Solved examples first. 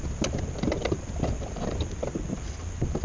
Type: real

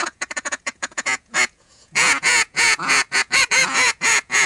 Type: fake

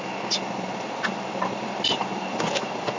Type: real